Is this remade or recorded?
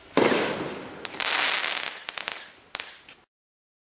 recorded